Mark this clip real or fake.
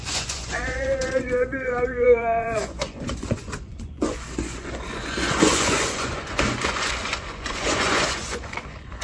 fake